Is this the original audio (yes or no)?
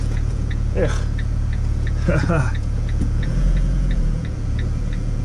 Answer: no